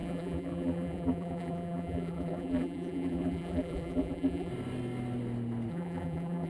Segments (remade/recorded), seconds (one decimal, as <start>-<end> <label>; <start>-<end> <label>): 0.0-4.5 remade; 4.5-5.7 recorded; 5.7-6.5 remade